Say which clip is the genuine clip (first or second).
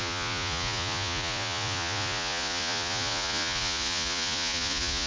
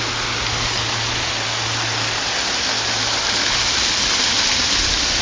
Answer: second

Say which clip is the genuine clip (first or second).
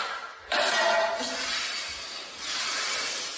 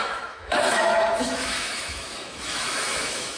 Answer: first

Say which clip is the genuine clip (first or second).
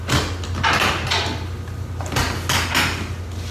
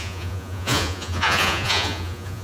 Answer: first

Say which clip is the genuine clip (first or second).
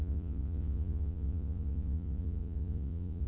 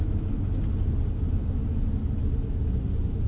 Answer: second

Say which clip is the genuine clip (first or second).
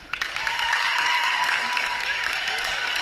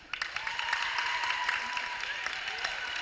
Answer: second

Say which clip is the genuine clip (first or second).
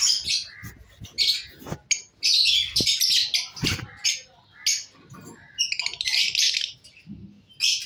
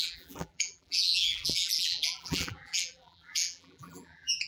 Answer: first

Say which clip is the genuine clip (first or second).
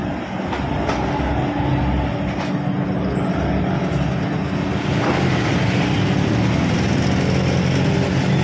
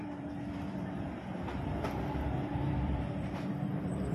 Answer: first